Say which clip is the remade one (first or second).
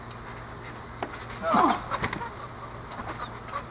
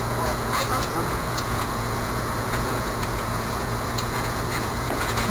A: second